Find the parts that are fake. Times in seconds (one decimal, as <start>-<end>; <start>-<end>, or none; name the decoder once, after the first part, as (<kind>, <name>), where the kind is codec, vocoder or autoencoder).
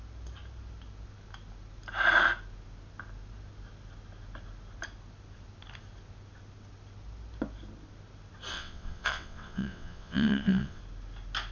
8.5-10.8 (vocoder, WaveNeXt)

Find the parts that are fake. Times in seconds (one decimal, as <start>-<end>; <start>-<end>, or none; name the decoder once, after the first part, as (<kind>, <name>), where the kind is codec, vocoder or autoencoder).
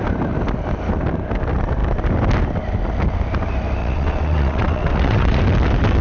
3.8-5.4 (vocoder, WaveNeXt)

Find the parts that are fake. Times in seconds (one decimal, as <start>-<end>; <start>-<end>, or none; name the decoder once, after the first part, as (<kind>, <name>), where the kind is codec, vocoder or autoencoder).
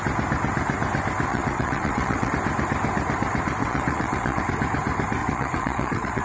1.3-2.3 (vocoder, WaveNeXt); 3.6-4.4; 5.2-6.2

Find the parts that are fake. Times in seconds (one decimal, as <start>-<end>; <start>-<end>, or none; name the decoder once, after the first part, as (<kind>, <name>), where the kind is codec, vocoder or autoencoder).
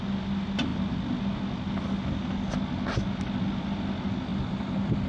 none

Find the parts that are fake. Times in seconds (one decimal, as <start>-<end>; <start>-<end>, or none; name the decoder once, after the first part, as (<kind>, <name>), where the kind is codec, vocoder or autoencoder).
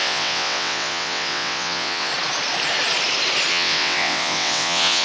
0.0-2.1 (vocoder, WaveNeXt); 3.5-5.0